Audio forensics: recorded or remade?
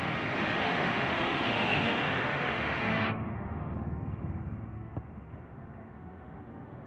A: remade